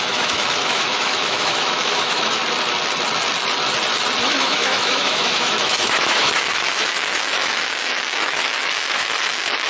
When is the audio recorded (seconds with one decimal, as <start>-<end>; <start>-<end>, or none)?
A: 2.4-4.2